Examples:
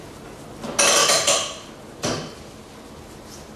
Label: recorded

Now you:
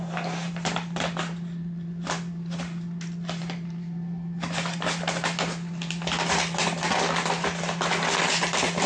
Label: recorded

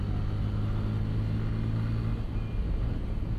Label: recorded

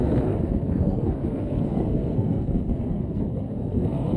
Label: remade